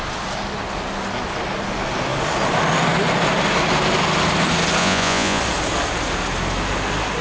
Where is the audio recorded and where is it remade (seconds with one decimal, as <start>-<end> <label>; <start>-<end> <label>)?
0.0-4.8 recorded; 4.8-5.4 remade; 5.4-7.2 recorded